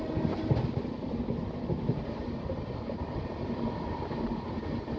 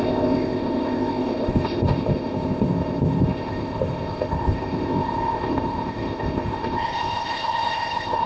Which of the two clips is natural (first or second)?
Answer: first